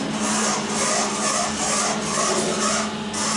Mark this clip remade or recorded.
recorded